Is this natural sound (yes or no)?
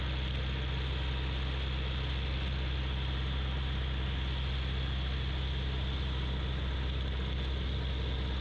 yes